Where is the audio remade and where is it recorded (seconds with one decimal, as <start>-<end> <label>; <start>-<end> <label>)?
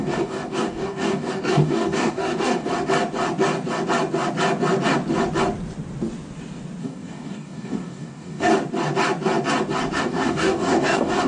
0.0-2.7 remade; 2.7-6.8 recorded; 6.8-8.5 remade; 8.5-10.0 recorded; 10.0-11.3 remade